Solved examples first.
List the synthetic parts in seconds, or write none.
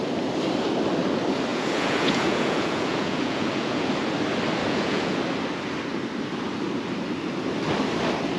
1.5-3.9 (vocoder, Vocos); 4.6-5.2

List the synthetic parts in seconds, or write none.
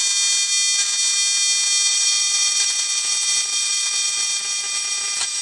1.9-5.4 (vocoder, Vocos)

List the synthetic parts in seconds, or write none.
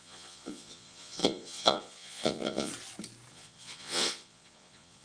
0.0-2.7 (vocoder, Vocos); 3.3-5.0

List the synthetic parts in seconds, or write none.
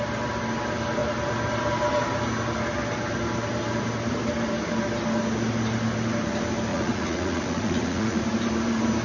6.7-8.2 (vocoder, Vocos)